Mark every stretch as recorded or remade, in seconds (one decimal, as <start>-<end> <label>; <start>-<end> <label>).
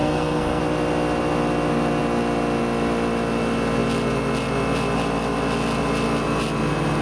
0.0-0.6 remade; 0.6-7.0 recorded